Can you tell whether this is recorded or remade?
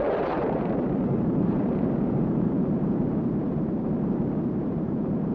remade